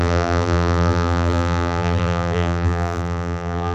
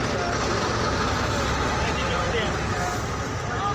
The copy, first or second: first